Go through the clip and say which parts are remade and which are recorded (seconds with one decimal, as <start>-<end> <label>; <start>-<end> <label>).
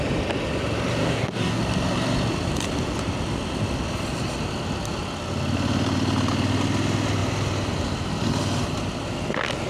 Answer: 0.0-1.0 recorded; 1.0-1.6 remade; 1.6-9.7 recorded